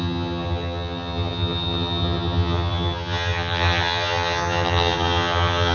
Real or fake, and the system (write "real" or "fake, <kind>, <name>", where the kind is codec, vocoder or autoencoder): fake, vocoder, HiFi-GAN